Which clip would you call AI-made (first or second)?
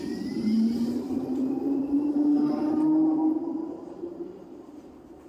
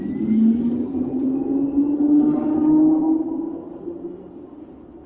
first